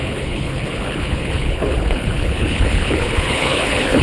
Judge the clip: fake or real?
fake